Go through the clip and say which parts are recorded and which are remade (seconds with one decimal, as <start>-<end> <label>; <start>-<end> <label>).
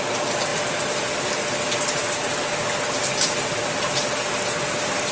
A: 0.0-5.1 recorded